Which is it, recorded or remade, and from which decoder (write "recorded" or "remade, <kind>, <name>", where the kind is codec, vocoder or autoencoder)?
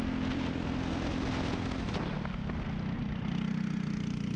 recorded